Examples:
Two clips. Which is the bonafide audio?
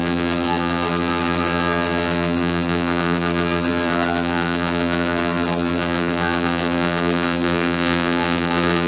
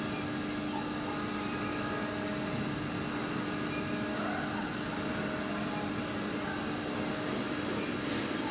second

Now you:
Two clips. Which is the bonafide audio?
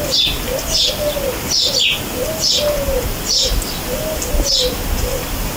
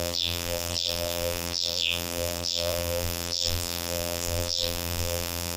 first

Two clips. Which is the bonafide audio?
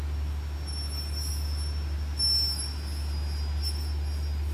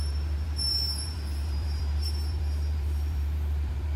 first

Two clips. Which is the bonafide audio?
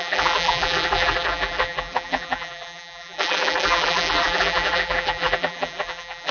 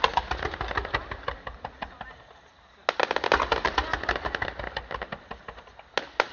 second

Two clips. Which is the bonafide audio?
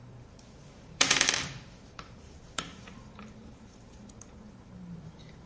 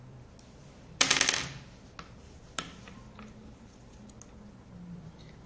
second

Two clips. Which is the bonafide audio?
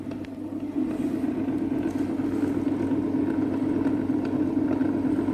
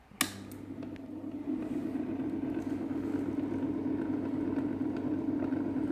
second